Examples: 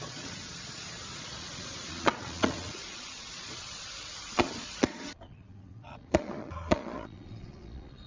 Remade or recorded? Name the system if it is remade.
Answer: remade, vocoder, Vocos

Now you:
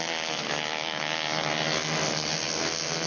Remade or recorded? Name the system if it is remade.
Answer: recorded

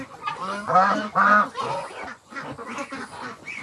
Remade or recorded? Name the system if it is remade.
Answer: remade, vocoder, Vocos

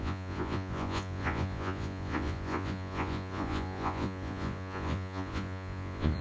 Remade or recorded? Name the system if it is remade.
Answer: remade, vocoder, Vocos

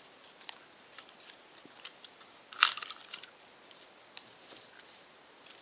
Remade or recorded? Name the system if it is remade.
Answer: recorded